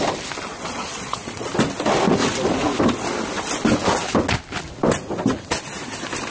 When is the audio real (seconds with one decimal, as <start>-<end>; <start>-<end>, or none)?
0.0-0.5; 1.5-6.3